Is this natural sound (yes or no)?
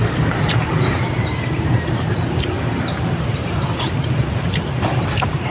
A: no